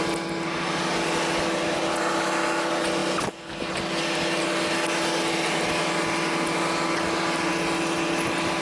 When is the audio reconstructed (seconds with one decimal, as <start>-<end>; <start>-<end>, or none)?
none